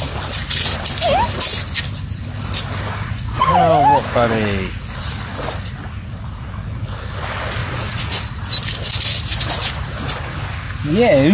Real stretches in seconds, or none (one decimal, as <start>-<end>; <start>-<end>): 0.0-3.0; 3.6-7.6; 8.4-11.3